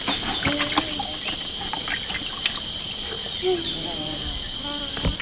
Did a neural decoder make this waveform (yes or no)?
no